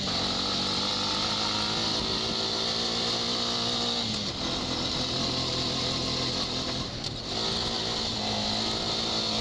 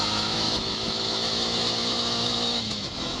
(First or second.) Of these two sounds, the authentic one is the first